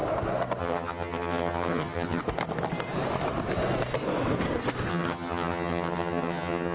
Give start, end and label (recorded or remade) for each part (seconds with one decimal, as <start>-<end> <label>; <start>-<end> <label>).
0.0-0.6 recorded; 0.6-2.2 remade; 2.2-4.9 recorded; 4.9-6.7 remade